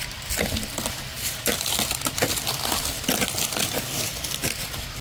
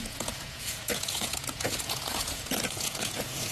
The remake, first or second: second